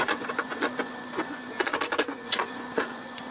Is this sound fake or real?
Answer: fake